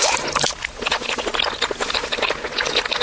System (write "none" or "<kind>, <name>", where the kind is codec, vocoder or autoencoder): none